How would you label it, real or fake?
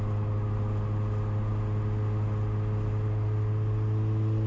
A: real